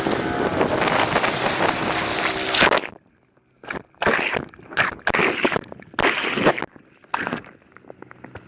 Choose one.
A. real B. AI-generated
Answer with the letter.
A